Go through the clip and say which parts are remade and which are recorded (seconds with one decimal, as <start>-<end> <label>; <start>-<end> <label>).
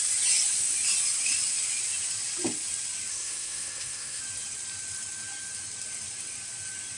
0.0-3.1 recorded; 3.1-4.2 remade; 4.2-7.0 recorded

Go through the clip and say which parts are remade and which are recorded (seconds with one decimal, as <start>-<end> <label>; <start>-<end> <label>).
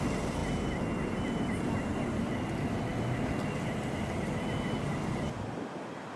0.0-6.2 recorded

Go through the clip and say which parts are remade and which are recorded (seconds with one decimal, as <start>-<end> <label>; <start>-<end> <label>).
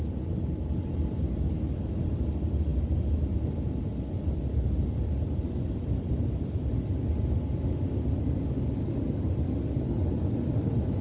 0.0-11.0 recorded